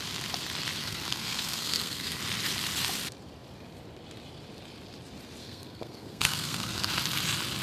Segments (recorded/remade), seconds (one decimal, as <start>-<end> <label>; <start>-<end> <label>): 0.0-0.8 recorded; 0.8-2.2 remade; 2.2-5.4 recorded; 5.4-6.9 remade; 6.9-7.6 recorded